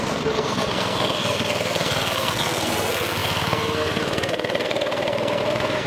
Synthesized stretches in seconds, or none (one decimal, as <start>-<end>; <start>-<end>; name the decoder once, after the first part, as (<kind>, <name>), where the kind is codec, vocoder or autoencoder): 0.0-5.9 (codec, SNAC)